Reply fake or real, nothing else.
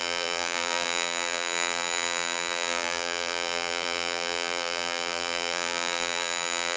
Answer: fake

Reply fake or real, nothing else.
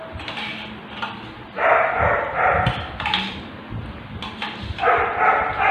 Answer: fake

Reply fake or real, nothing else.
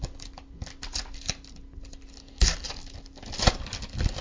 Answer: real